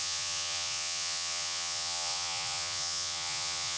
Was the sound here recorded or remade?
remade